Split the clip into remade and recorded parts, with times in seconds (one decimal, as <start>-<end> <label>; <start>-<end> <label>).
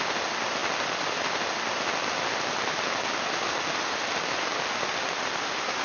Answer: 0.0-5.8 recorded